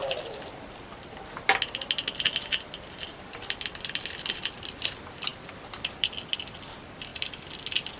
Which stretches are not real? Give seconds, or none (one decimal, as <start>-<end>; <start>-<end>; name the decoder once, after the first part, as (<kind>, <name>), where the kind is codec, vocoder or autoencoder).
2.9-7.1 (vocoder, BigVGAN v2)